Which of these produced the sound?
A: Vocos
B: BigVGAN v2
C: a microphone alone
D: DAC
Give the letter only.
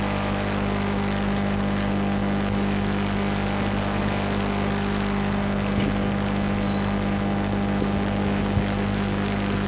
C